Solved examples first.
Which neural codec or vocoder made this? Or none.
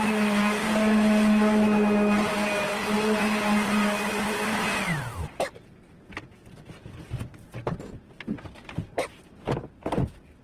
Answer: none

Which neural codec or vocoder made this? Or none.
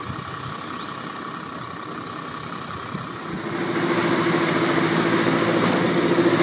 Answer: none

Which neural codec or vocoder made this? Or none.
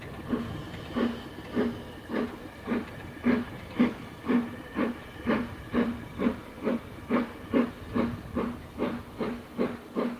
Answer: none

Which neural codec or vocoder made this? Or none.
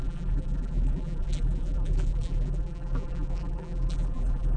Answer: vocoder, BigVGAN v2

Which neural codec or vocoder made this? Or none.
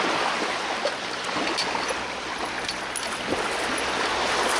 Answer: none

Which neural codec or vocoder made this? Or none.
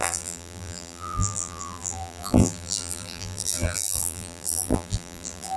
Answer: vocoder, BigVGAN v2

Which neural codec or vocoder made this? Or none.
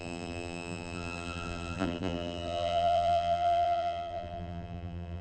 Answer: vocoder, BigVGAN v2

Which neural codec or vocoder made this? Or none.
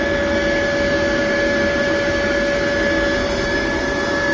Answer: none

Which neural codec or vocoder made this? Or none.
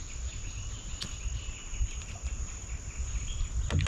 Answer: none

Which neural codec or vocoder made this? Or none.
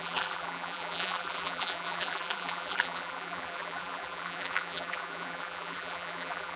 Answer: vocoder, BigVGAN v2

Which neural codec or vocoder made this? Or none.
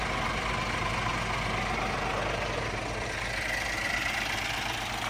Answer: none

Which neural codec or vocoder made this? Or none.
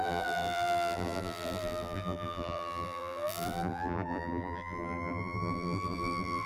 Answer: vocoder, BigVGAN v2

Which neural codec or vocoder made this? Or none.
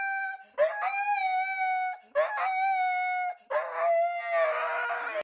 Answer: none